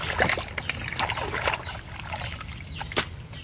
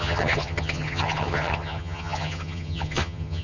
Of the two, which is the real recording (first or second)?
first